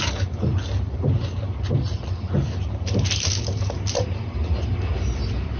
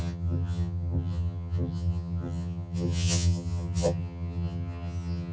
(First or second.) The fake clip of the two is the second